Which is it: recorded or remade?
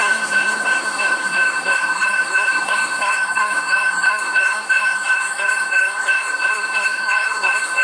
remade